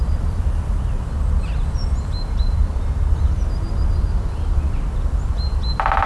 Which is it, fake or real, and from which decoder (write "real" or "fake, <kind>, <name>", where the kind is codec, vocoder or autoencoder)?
real